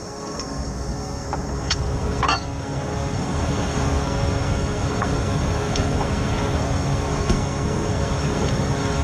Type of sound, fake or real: fake